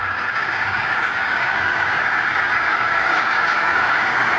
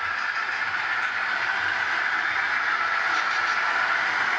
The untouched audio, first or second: second